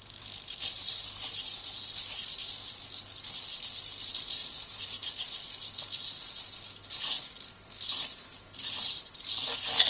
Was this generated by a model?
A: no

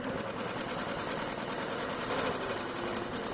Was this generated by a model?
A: no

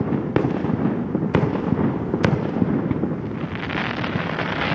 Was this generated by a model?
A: no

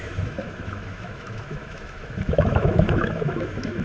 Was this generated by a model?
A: yes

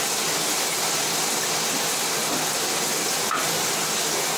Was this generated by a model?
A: no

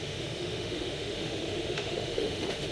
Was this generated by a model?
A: yes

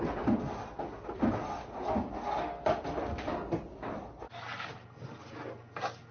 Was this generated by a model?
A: no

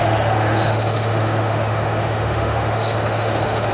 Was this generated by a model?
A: yes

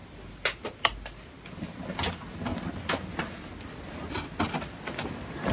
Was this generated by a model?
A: no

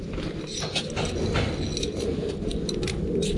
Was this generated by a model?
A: no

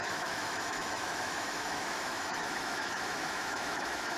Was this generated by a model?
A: yes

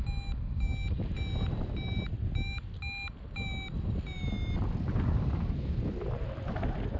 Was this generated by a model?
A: no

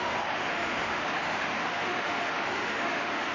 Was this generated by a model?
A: yes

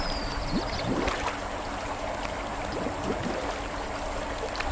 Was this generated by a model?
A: no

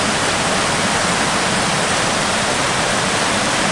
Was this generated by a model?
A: no